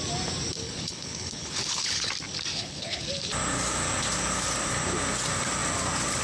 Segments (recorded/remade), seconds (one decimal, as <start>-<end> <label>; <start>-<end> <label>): 0.0-0.6 recorded; 0.6-2.1 remade; 2.1-2.5 recorded; 2.5-3.1 remade; 3.1-6.2 recorded